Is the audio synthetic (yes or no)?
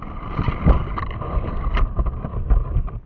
no